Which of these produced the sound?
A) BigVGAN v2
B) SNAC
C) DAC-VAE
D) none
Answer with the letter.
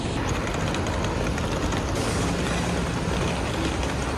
D